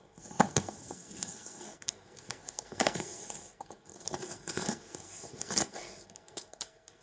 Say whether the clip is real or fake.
fake